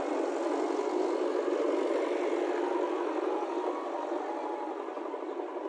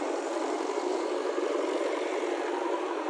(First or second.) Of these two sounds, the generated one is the second